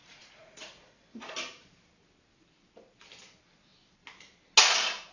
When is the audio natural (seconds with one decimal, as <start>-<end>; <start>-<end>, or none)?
1.3-5.1